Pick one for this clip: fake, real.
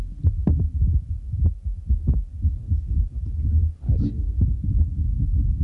real